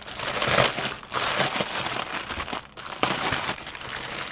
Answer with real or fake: real